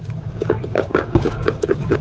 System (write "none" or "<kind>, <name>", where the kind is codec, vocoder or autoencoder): codec, DAC